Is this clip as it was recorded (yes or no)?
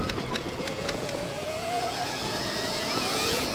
no